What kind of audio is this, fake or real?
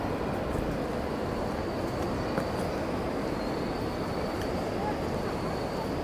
real